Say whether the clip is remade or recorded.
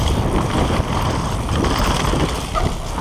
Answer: recorded